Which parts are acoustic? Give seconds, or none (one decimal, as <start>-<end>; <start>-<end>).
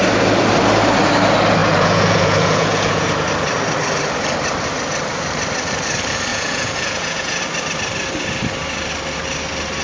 0.0-1.6; 3.1-6.3; 7.4-9.8